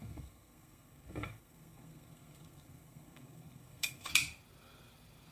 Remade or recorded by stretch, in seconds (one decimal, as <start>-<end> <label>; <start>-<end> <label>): 0.0-4.1 remade; 4.1-5.3 recorded